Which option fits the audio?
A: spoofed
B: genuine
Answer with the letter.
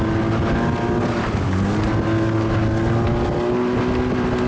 B